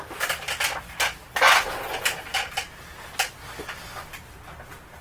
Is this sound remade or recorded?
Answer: recorded